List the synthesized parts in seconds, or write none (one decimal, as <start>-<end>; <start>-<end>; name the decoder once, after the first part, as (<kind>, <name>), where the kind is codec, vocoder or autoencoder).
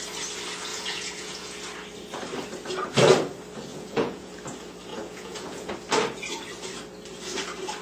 0.7-1.6 (vocoder, Vocos); 3.7-4.3; 4.9-5.7